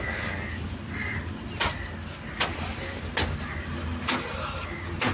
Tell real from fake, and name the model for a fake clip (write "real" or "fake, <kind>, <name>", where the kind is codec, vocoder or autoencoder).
real